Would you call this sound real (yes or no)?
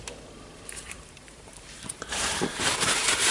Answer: no